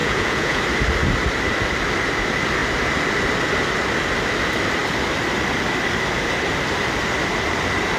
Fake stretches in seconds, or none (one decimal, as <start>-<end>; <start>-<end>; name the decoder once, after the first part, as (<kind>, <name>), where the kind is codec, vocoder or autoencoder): 0.0-0.6 (vocoder, Vocos)